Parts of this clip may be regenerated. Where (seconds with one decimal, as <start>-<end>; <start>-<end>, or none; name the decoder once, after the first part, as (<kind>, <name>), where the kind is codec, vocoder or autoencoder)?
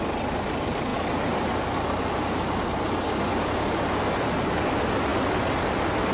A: none